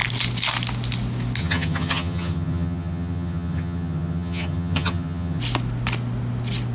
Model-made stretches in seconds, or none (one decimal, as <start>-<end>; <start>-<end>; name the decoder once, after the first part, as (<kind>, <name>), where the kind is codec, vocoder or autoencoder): 1.4-5.4 (vocoder, HiFi-GAN)

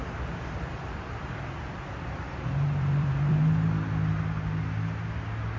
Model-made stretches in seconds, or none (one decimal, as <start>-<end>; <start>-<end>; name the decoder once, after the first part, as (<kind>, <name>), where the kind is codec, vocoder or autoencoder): 0.0-3.4 (vocoder, BigVGAN v2)

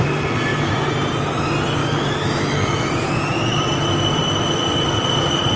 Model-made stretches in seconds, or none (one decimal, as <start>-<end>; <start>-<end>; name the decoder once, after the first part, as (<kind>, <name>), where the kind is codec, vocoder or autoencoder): 1.8-2.9 (autoencoder, DAC-VAE)

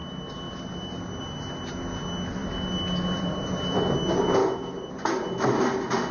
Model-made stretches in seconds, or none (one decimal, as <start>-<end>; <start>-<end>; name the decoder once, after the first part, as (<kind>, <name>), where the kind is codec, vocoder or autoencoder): 4.4-4.9 (autoencoder, DAC-VAE)

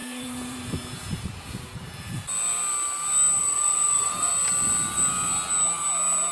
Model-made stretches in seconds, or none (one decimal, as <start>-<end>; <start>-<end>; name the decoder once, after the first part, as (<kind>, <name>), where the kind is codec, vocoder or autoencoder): 0.0-2.2 (vocoder, Vocos); 3.4-4.3

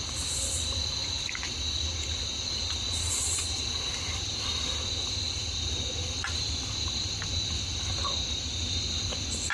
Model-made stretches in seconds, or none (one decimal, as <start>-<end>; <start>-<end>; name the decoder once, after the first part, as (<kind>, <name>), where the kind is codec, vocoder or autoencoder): 1.0-1.5 (vocoder, BigVGAN v2)

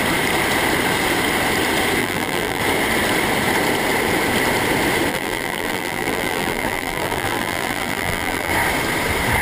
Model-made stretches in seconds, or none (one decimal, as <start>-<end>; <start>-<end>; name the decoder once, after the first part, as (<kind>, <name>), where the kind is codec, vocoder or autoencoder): 2.0-2.6 (vocoder, BigVGAN v2); 5.1-8.5

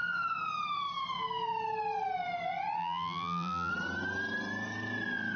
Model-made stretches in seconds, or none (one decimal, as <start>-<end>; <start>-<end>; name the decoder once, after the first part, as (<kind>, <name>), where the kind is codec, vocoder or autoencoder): 2.8-3.7 (vocoder, BigVGAN v2)